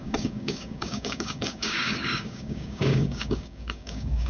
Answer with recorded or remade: remade